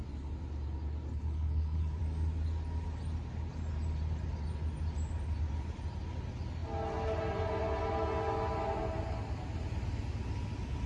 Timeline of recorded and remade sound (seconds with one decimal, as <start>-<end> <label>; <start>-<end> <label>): 0.0-1.1 recorded; 1.1-2.0 remade; 2.0-10.9 recorded